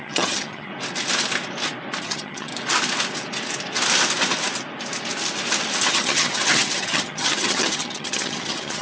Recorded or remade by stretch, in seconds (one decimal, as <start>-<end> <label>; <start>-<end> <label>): 0.0-0.7 remade; 0.7-2.0 recorded; 2.0-2.5 remade; 2.5-5.9 recorded; 5.9-8.8 remade